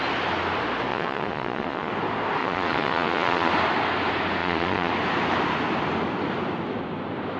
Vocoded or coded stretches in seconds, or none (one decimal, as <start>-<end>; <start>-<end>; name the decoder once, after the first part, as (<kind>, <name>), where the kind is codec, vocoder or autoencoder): 0.9-1.9 (vocoder, Vocos); 2.4-3.5; 4.4-4.9